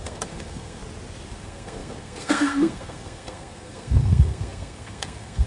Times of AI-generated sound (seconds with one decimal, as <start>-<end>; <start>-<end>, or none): 0.0-0.8; 1.3-5.5